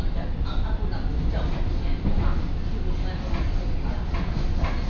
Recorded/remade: recorded